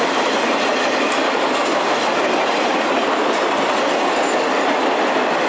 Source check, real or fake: real